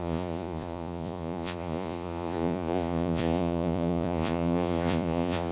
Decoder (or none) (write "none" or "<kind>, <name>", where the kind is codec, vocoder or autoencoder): vocoder, Vocos